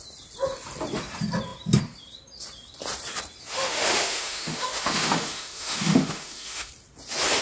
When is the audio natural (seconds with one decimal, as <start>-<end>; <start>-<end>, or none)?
0.0-3.5; 6.7-7.4